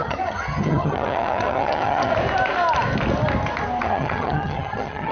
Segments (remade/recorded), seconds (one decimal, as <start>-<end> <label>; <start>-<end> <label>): 0.0-2.1 remade; 2.1-3.8 recorded; 3.8-5.1 remade